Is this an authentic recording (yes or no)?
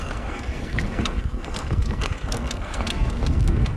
no